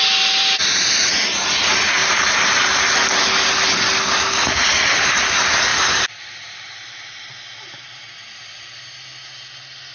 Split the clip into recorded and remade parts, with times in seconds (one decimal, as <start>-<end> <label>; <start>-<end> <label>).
0.0-0.4 recorded; 0.4-1.1 remade; 1.1-2.0 recorded; 2.0-2.9 remade; 2.9-5.7 recorded; 5.7-7.0 remade; 7.0-9.9 recorded